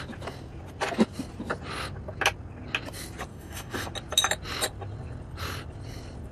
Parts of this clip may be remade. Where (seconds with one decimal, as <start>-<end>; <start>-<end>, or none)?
3.3-3.9